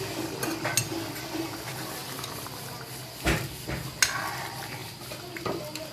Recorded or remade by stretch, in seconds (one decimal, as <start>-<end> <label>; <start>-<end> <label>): 0.0-2.0 recorded; 2.0-2.6 remade; 2.6-5.9 recorded